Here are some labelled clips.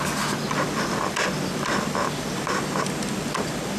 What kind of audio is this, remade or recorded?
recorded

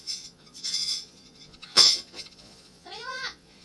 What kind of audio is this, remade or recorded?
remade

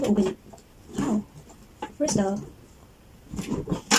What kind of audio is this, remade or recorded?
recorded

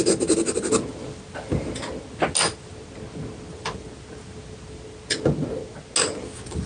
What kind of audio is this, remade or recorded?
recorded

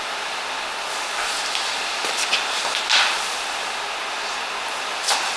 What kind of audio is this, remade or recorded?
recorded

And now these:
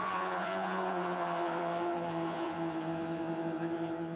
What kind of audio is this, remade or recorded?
remade